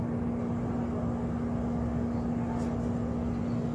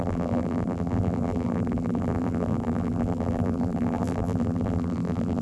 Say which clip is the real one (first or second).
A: first